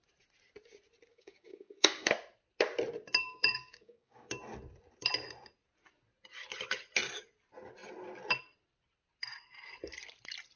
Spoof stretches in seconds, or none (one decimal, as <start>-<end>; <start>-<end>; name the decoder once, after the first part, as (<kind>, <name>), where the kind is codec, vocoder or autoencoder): 1.1-2.1 (codec, DAC); 3.2-4.3